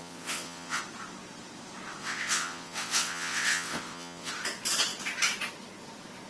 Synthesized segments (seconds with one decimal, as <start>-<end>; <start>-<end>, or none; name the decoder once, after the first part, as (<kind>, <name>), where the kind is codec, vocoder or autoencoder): 0.0-0.8 (vocoder, WaveNeXt); 2.0-4.3